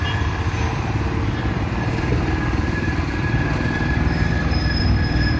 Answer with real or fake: fake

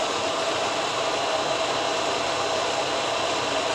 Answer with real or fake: fake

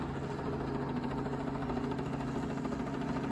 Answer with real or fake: real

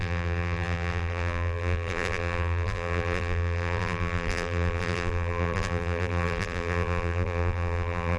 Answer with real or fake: fake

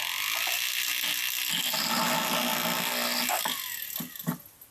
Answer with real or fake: real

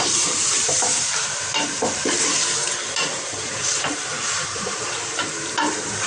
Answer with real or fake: fake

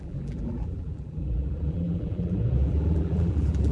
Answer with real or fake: fake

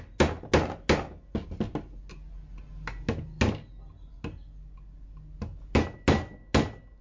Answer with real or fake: real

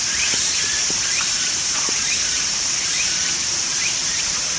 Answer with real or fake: fake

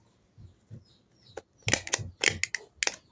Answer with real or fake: real